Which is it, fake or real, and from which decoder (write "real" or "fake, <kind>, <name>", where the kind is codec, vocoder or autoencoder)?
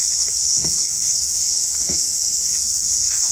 fake, codec, SNAC